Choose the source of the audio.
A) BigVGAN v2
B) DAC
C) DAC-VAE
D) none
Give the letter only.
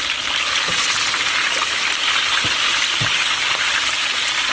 D